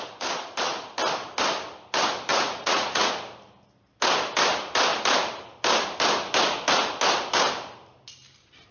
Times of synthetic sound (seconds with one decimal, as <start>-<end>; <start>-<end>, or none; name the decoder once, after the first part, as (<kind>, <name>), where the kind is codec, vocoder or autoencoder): 2.3-3.1 (vocoder, Vocos)

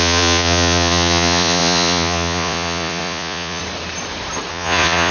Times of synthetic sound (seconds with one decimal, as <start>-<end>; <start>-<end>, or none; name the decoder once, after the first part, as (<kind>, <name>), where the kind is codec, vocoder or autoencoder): 0.0-3.6 (vocoder, Vocos); 4.5-5.1